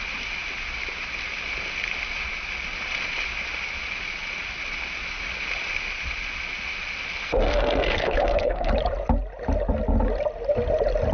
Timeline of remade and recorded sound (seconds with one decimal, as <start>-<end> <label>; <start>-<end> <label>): 0.0-7.2 recorded; 7.2-8.7 remade; 8.7-11.1 recorded